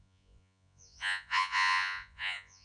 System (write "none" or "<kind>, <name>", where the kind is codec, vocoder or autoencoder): vocoder, Vocos